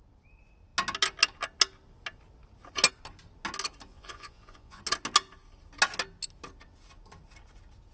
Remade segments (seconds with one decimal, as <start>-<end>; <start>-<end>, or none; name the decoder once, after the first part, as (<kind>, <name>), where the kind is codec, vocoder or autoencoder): 3.9-4.8 (vocoder, Vocos)